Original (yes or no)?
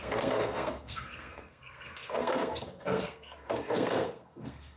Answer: no